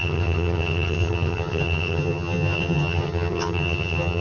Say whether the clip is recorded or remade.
remade